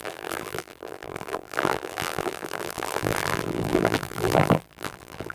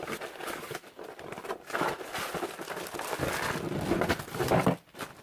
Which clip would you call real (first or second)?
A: second